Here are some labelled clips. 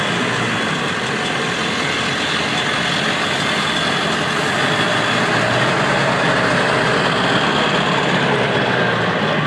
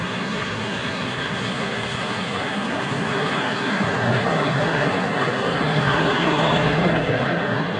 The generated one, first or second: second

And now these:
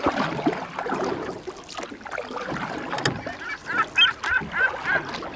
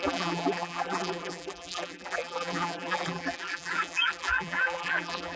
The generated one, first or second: second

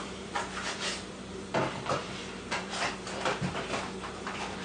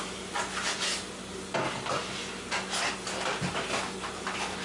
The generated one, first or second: first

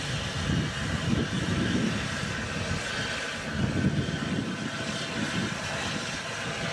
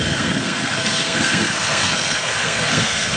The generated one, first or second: second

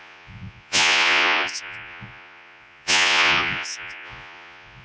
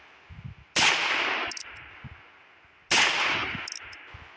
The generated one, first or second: first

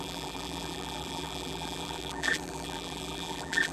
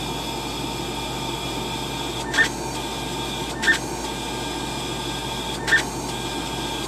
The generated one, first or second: first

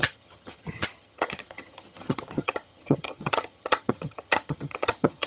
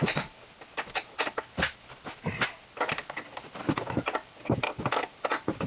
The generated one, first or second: first